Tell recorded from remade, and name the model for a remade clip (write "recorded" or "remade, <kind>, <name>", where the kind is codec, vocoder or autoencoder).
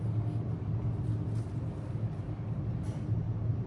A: recorded